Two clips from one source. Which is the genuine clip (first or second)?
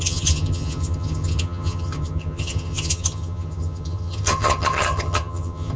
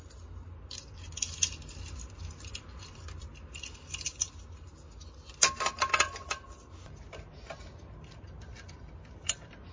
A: second